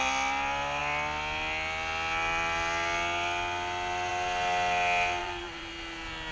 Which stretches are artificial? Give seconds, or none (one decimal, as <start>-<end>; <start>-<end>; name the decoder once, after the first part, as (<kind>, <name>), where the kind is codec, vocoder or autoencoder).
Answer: 5.2-5.7 (vocoder, BigVGAN v2)